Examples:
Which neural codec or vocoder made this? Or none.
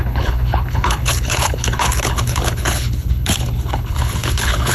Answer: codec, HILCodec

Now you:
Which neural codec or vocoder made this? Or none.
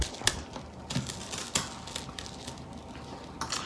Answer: none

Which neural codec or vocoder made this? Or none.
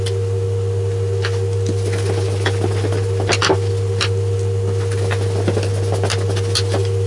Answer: none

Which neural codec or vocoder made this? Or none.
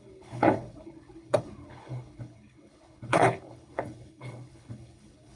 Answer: codec, HILCodec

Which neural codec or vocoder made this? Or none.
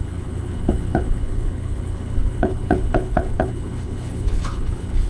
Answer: codec, HILCodec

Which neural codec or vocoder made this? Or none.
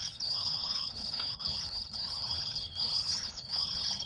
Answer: codec, HILCodec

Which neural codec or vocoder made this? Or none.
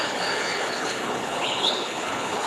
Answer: codec, HILCodec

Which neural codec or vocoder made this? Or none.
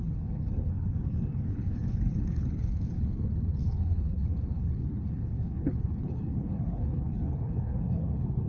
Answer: codec, HILCodec